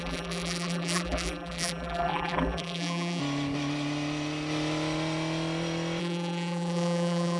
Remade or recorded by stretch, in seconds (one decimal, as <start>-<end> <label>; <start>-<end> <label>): 0.0-3.2 remade; 3.2-6.0 recorded; 6.0-7.4 remade